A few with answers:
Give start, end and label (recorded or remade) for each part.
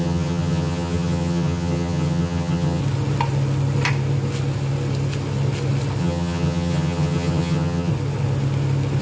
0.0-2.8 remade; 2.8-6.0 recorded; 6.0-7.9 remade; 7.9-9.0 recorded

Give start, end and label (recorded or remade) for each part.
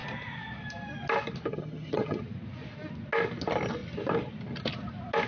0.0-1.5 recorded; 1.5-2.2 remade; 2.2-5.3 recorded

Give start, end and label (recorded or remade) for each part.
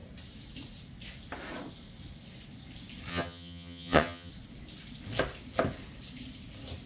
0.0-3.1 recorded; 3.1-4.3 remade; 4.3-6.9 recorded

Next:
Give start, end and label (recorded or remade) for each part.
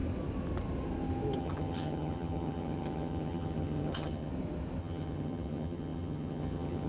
0.0-1.4 recorded; 1.4-4.3 remade; 4.3-4.8 recorded; 4.8-6.9 remade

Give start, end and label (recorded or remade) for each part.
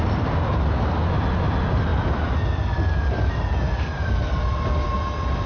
0.0-5.5 recorded